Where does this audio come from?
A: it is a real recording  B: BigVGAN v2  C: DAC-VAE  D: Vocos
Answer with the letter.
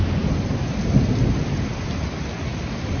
A